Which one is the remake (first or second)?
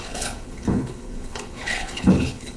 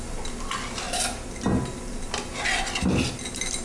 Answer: first